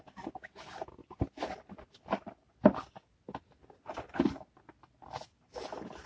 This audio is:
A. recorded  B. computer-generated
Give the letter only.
A